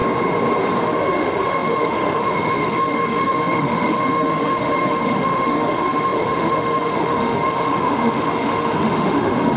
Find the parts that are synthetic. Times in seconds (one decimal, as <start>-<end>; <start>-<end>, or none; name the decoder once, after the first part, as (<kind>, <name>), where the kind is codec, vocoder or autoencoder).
0.8-9.6 (autoencoder, DAC-VAE)